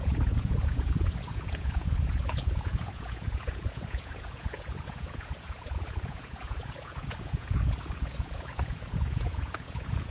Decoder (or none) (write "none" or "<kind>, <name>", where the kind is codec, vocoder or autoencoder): vocoder, Vocos